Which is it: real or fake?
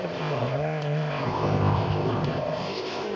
fake